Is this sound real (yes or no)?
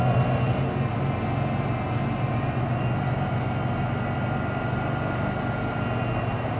yes